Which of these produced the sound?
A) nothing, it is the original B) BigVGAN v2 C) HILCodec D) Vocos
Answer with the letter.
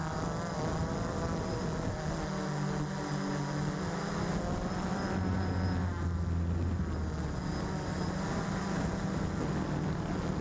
A